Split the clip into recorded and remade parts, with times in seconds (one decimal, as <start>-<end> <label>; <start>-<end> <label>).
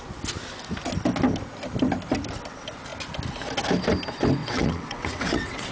0.0-4.4 recorded; 4.4-5.7 remade